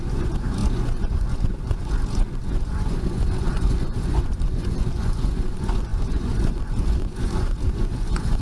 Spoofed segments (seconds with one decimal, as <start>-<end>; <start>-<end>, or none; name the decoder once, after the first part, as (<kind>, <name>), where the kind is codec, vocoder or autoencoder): 0.0-8.4 (vocoder, Vocos)